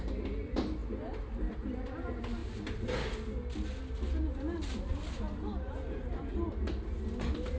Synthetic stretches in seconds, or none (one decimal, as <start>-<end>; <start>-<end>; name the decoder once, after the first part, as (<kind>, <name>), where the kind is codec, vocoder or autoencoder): 0.0-0.8 (vocoder, BigVGAN v2); 1.7-2.4; 5.7-7.6